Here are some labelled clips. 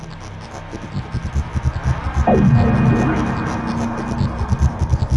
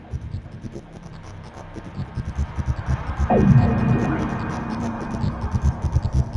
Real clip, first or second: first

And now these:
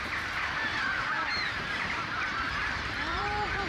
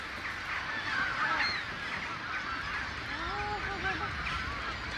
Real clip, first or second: second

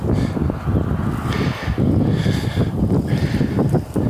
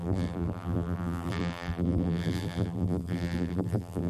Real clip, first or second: first